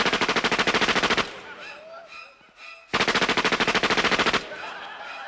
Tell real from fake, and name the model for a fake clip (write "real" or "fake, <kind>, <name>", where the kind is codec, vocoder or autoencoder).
real